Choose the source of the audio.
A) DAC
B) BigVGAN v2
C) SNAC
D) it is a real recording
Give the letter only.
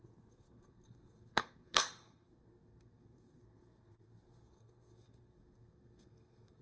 C